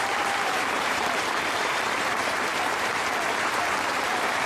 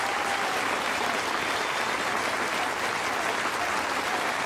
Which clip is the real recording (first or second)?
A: second